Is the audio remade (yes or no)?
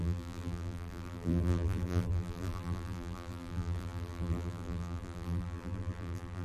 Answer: yes